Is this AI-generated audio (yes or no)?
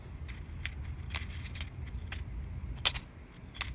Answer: no